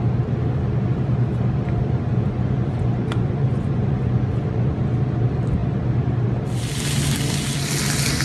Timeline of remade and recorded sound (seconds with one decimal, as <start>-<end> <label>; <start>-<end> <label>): 0.0-2.1 recorded; 2.1-4.8 remade; 4.8-8.2 recorded